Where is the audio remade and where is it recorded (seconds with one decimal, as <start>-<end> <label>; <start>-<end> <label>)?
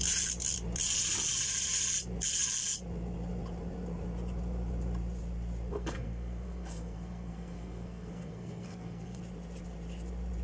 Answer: 0.0-5.7 recorded; 5.7-9.2 remade; 9.2-10.4 recorded